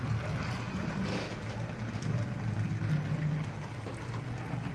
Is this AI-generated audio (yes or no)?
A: no